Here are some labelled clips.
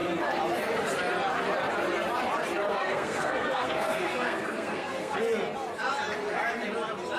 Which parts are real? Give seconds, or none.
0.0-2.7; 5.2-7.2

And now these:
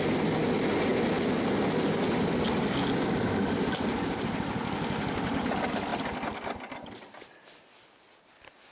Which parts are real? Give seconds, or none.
0.0-8.7